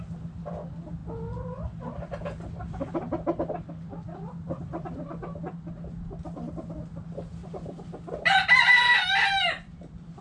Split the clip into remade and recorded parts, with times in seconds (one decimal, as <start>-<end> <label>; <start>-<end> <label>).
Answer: 0.0-10.2 recorded